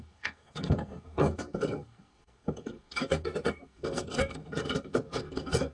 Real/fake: fake